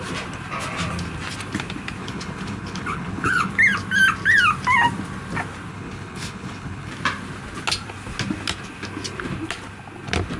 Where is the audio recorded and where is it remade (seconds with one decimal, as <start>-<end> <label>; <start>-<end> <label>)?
0.0-2.0 recorded; 2.0-3.5 remade; 3.5-5.7 recorded; 5.7-6.9 remade; 6.9-10.4 recorded